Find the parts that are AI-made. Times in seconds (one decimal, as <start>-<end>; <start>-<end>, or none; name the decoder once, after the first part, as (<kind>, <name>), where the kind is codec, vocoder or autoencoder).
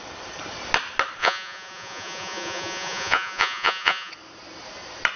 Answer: 1.2-4.1 (vocoder, Vocos)